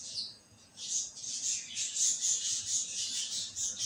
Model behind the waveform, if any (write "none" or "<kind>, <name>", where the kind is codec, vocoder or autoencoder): vocoder, Vocos